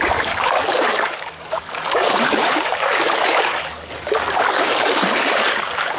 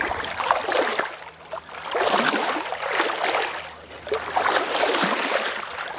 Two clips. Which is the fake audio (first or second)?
first